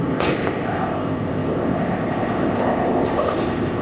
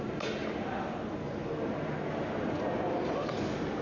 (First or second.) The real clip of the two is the second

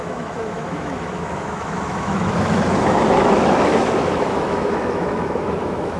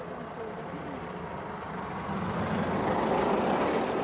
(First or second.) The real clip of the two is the second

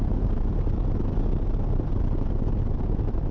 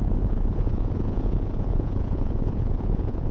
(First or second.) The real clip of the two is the first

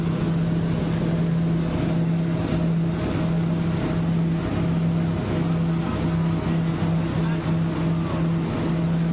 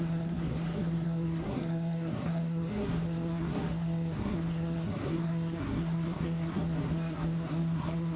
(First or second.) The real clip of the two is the first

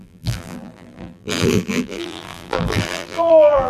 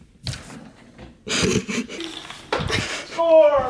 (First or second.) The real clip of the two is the second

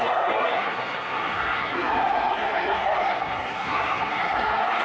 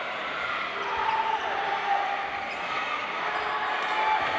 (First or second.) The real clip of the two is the second